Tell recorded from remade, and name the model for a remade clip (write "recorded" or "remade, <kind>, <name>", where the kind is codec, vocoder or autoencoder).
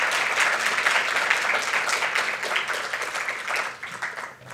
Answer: recorded